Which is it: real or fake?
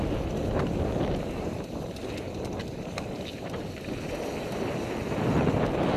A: real